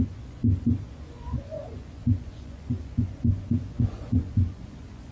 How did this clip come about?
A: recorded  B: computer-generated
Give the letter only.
B